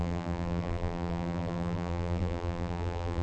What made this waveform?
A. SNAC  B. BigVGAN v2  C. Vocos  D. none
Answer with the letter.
B